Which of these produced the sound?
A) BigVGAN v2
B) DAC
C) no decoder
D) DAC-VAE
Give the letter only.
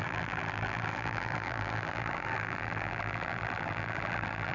A